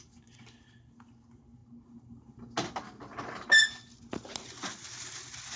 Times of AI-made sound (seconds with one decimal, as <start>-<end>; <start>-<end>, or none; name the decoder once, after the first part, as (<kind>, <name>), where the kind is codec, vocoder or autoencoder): none